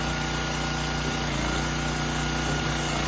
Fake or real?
real